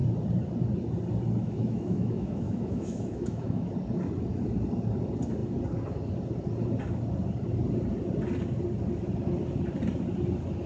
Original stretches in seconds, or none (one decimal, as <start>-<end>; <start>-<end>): 0.0-1.4; 3.7-10.7